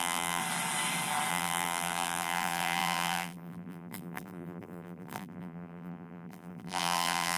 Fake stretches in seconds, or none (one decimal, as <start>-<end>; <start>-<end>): 0.0-0.4; 1.3-7.4